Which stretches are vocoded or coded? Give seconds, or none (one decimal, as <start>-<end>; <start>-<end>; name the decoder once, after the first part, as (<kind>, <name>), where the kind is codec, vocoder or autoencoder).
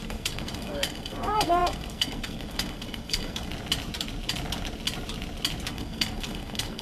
0.0-3.5 (codec, SNAC); 5.7-6.8